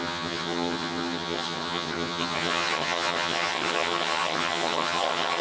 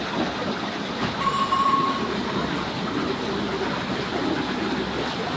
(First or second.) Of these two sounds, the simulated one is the first